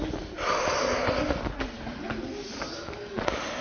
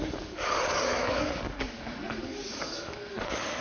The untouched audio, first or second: first